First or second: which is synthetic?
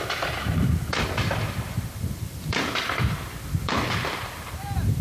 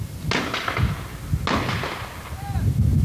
first